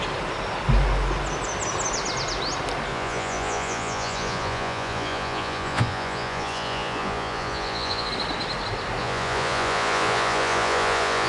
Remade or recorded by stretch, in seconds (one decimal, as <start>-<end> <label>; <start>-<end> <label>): 0.0-2.9 recorded; 2.9-8.1 remade; 8.1-9.0 recorded; 9.0-11.3 remade